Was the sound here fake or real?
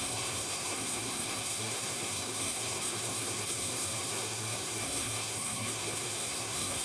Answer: fake